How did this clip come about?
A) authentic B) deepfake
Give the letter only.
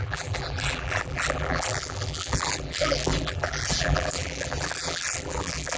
B